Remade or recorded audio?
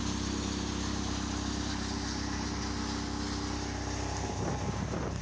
recorded